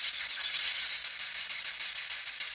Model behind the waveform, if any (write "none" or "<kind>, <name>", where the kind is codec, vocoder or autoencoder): none